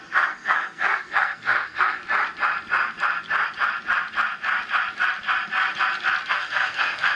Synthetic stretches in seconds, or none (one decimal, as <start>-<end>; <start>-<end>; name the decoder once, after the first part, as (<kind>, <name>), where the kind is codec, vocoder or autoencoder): 0.0-2.0 (codec, SNAC); 6.3-7.2